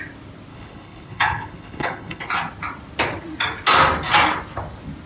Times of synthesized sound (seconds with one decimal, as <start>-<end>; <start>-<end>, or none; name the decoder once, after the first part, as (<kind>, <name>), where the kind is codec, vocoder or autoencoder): 0.5-2.2 (codec, HILCodec)